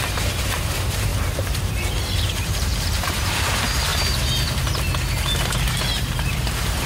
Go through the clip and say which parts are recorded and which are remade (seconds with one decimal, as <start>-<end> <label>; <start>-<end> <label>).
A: 0.0-3.9 remade; 3.9-5.9 recorded; 5.9-6.9 remade